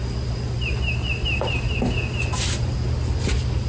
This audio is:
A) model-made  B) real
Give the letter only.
B